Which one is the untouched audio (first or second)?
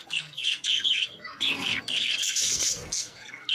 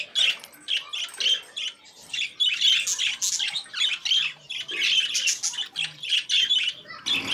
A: second